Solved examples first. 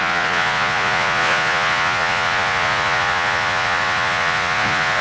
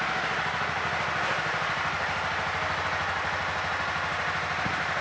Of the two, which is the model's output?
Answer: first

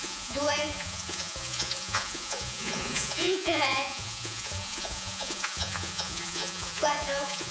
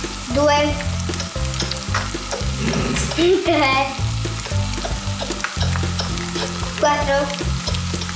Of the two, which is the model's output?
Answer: first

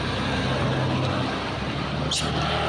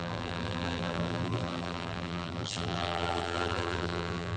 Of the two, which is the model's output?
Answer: second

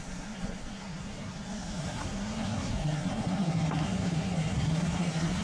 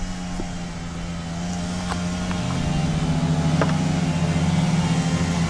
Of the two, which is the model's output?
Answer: first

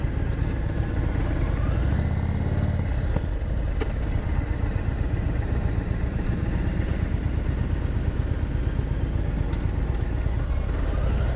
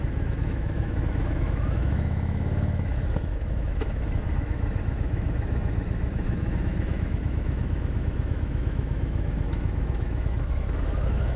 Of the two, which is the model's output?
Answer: second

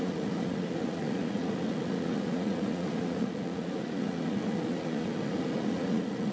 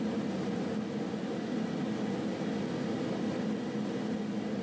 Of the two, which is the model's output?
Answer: first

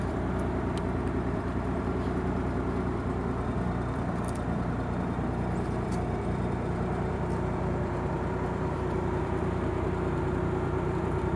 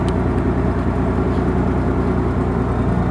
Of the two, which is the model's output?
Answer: first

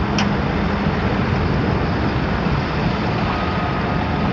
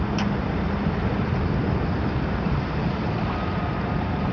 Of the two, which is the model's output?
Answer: second